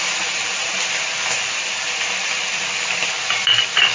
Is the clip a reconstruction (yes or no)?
no